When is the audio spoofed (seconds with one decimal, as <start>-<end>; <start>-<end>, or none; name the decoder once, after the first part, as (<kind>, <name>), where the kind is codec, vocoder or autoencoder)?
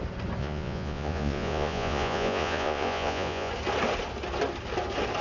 0.4-3.5 (vocoder, Vocos)